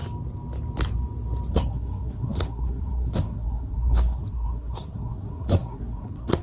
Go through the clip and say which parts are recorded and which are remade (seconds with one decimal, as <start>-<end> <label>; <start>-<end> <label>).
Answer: 0.0-1.5 recorded; 1.5-6.4 remade